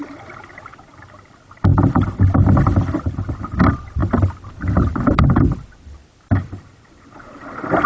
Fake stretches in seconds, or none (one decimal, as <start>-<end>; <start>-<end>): none